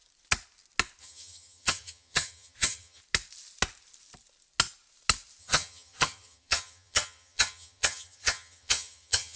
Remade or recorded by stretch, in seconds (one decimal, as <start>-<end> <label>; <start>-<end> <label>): 0.0-1.0 recorded; 1.0-3.0 remade; 3.0-5.4 recorded; 5.4-9.4 remade